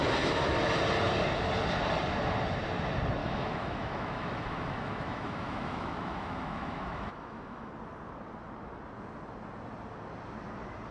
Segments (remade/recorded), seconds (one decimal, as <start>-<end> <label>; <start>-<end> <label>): 0.0-3.2 recorded; 3.2-7.7 remade; 7.7-10.9 recorded